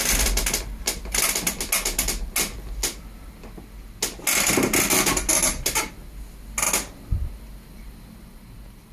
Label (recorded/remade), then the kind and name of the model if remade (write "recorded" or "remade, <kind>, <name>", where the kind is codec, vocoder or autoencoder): recorded